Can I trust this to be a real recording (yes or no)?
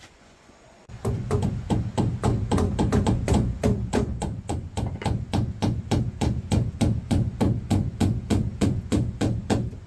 no